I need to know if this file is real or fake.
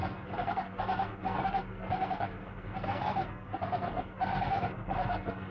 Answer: fake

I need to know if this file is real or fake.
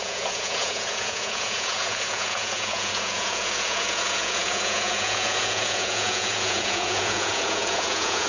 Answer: fake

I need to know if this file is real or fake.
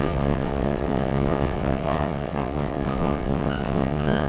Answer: fake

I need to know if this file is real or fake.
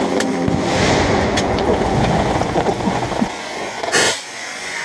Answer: fake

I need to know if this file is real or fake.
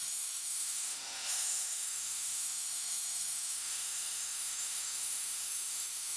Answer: fake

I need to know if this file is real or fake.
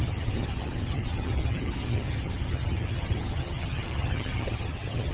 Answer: fake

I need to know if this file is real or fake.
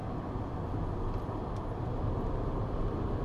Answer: real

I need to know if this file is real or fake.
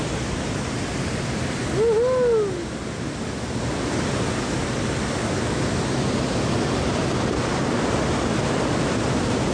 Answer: real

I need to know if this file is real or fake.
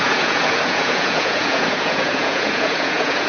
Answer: fake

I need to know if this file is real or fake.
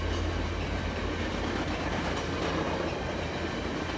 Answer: real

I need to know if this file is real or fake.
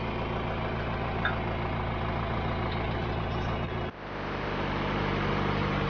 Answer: real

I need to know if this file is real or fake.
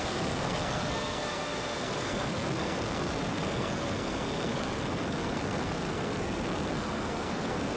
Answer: fake